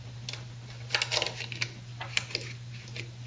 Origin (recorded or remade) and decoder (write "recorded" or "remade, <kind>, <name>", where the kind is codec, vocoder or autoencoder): recorded